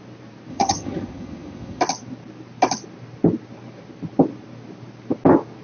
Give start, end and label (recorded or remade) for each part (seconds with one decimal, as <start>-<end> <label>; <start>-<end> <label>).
0.0-0.5 recorded; 0.5-1.8 remade; 1.8-5.6 recorded